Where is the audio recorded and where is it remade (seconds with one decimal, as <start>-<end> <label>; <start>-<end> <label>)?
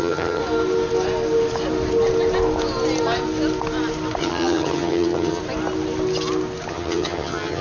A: 0.0-0.4 remade; 0.4-4.2 recorded; 4.2-5.4 remade; 5.4-6.7 recorded; 6.7-7.6 remade